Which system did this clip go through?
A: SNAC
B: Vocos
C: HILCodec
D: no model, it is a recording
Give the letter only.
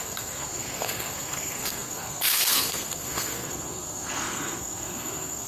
A